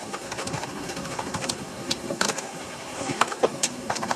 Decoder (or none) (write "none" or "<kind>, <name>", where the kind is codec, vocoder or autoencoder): codec, SNAC